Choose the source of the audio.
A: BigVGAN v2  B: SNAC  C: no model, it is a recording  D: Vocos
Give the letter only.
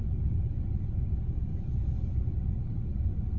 C